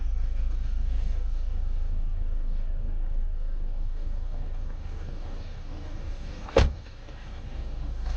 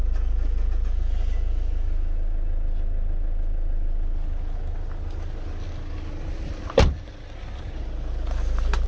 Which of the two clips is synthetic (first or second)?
first